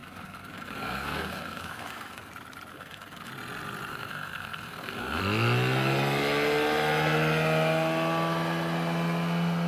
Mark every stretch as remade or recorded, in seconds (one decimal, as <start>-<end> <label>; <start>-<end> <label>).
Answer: 0.0-2.3 remade; 2.3-2.7 recorded; 2.7-3.3 remade; 3.3-3.9 recorded; 3.9-5.2 remade; 5.2-9.7 recorded